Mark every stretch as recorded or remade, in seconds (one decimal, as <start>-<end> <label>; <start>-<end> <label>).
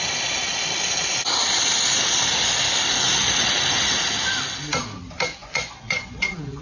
0.0-5.4 recorded; 5.4-6.6 remade